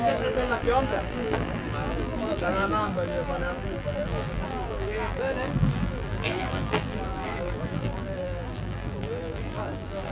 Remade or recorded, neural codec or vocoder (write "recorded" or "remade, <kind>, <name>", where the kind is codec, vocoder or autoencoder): remade, vocoder, BigVGAN v2